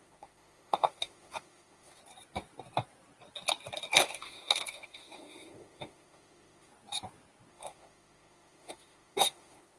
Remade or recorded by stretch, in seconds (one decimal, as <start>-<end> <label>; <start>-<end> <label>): 0.0-2.0 remade; 2.0-4.0 recorded; 4.0-6.7 remade; 6.7-7.5 recorded; 7.5-9.8 remade